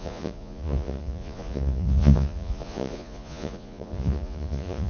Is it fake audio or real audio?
fake